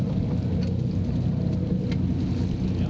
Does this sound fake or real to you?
real